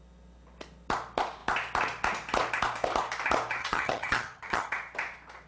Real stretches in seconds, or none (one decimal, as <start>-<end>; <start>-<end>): 0.0-3.6; 4.7-5.5